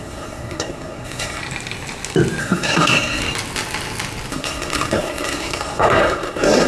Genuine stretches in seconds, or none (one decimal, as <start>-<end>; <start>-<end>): 1.4-2.4; 3.2-4.3